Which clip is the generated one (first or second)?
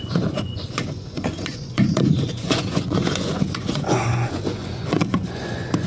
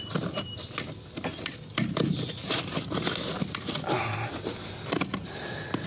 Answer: first